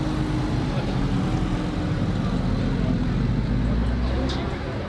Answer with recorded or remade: recorded